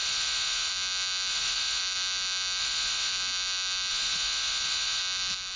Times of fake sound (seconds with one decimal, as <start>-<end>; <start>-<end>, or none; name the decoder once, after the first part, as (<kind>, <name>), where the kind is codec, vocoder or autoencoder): 0.0-0.7 (vocoder, Vocos); 1.3-1.8; 2.6-3.1; 3.9-5.0